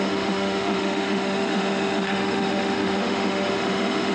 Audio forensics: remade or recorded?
remade